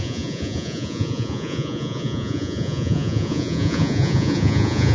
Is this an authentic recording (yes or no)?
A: no